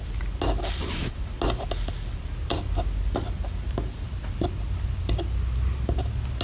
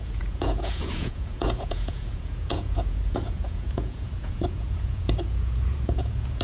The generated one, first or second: second